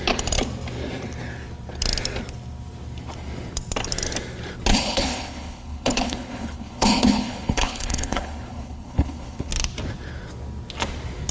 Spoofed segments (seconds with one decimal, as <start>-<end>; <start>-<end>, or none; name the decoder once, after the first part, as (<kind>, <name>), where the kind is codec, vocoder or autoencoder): 4.7-9.5 (codec, HILCodec)